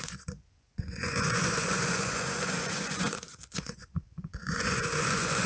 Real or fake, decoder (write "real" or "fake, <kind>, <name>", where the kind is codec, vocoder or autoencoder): fake, vocoder, Vocos